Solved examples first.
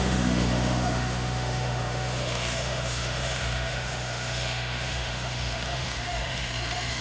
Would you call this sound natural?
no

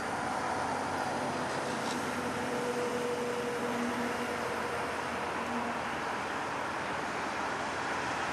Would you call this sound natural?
yes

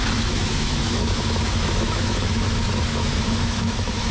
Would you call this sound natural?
no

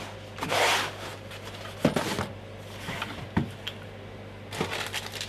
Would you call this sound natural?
yes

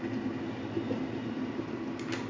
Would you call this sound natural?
yes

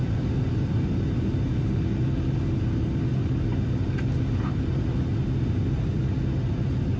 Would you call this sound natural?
yes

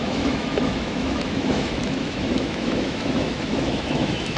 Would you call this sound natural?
no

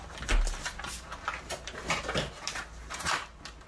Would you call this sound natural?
yes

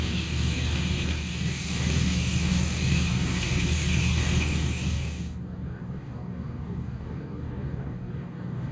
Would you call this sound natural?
no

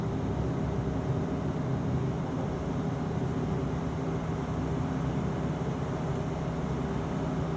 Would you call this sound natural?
yes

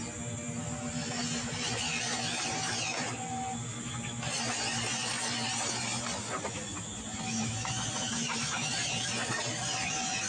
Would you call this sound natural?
yes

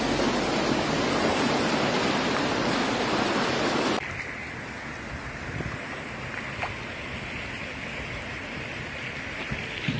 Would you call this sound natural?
yes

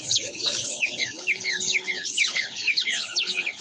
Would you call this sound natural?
no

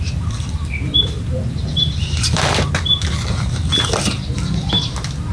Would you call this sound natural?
no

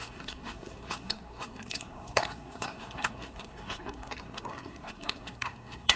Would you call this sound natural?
no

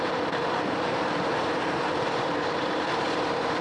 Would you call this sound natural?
no